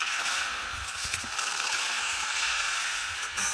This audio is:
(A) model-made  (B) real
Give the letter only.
A